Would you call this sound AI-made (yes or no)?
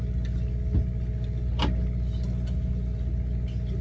no